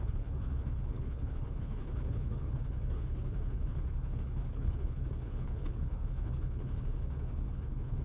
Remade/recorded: remade